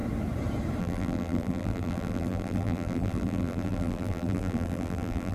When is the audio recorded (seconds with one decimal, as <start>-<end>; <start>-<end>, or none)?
0.0-0.8